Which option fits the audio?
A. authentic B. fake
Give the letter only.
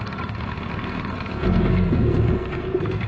B